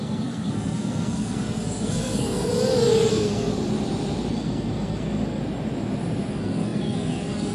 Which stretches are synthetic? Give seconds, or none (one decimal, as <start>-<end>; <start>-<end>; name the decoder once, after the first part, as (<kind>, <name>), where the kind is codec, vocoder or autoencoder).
0.0-2.5 (codec, SNAC); 3.1-3.5; 4.3-5.4; 6.3-7.5